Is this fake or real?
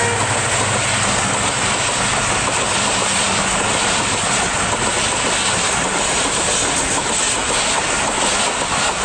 real